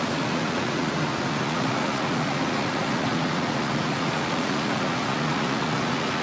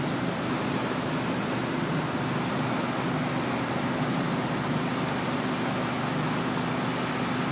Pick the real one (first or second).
second